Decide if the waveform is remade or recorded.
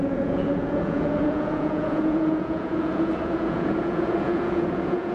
remade